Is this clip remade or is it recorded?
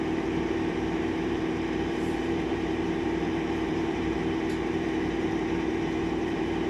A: remade